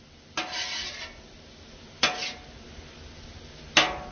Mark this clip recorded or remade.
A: recorded